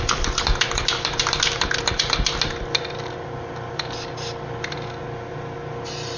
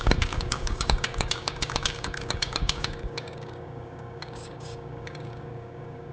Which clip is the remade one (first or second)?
second